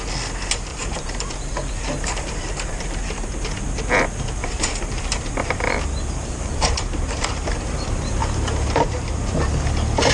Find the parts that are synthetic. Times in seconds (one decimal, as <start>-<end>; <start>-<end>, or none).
0.7-3.0; 4.4-7.5; 8.2-9.5